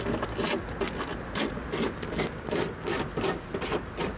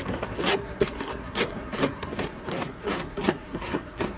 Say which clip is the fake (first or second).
second